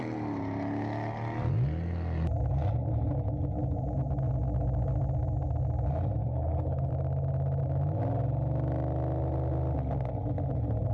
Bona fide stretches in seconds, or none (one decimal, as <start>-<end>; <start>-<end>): 0.0-6.2; 6.9-10.9